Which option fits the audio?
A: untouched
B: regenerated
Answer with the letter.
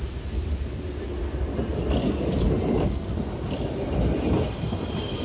A